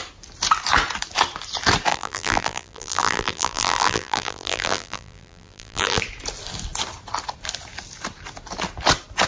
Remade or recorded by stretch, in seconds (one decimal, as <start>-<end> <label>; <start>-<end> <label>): 0.0-1.9 recorded; 1.9-6.0 remade; 6.0-9.3 recorded